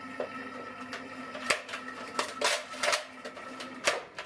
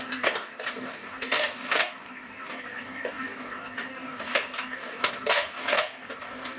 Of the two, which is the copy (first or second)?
second